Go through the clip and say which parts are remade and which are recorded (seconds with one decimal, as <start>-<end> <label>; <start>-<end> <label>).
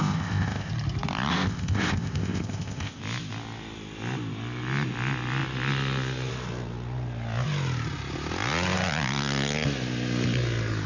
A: 0.0-0.7 remade; 0.7-1.3 recorded; 1.3-3.0 remade; 3.0-10.9 recorded